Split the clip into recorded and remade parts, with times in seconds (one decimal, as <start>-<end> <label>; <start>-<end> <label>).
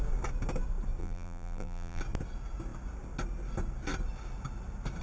0.0-1.0 recorded; 1.0-2.0 remade; 2.0-5.0 recorded